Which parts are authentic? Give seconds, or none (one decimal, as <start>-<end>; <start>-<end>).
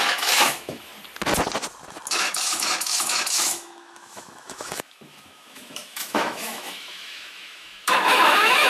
0.9-2.1